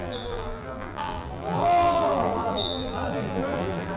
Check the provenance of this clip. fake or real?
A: fake